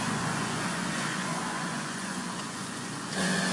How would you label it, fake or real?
fake